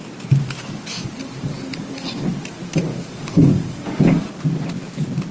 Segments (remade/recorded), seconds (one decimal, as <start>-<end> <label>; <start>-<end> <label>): 0.0-2.9 recorded; 2.9-4.4 remade; 4.4-5.3 recorded